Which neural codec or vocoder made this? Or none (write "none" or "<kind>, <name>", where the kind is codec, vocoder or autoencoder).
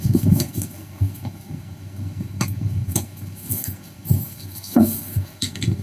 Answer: codec, SNAC